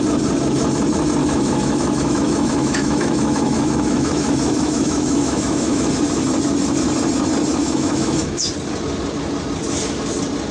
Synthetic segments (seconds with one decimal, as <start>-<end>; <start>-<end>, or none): 1.2-5.9; 7.6-8.5